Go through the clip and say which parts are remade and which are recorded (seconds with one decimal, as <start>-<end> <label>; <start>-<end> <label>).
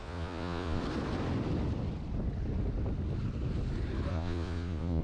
0.0-0.8 remade; 0.8-4.1 recorded; 4.1-5.0 remade